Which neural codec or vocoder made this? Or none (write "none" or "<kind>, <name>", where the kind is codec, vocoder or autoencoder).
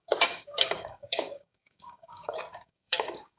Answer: codec, DAC